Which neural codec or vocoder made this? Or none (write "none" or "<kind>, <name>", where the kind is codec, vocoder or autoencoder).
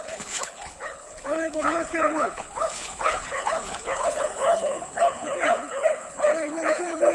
codec, HILCodec